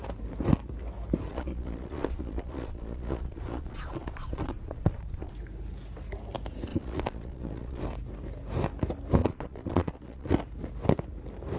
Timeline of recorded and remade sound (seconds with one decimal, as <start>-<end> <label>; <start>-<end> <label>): 0.0-1.3 recorded; 1.3-5.3 remade; 5.3-6.7 recorded; 6.7-7.8 remade; 7.8-9.2 recorded; 9.2-10.3 remade; 10.3-11.6 recorded

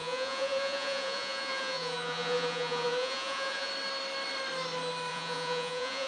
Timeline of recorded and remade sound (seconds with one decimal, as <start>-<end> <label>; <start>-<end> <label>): 0.0-3.7 remade; 3.7-5.1 recorded; 5.1-6.1 remade